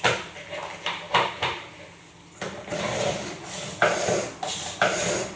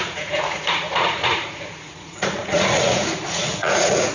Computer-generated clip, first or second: second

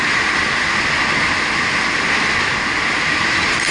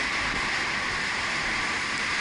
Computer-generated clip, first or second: second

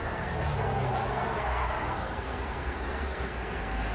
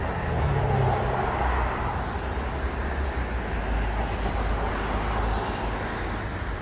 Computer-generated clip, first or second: first